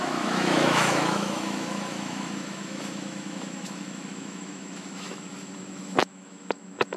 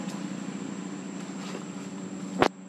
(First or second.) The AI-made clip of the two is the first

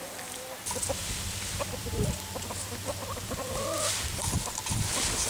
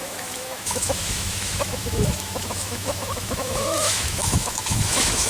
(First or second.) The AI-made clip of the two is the second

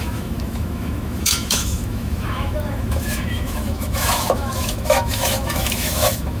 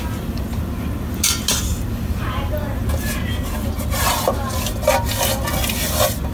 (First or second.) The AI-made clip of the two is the first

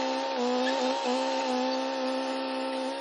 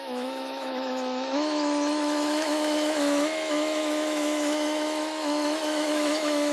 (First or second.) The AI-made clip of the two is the second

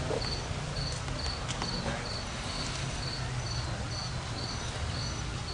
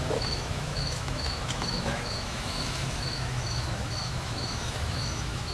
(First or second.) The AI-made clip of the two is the second